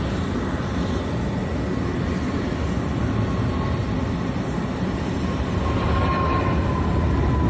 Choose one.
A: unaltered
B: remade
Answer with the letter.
A